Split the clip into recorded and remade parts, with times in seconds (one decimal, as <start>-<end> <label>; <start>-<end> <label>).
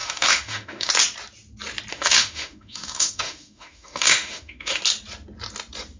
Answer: 0.0-0.9 remade; 0.9-1.9 recorded; 1.9-4.8 remade; 4.8-6.0 recorded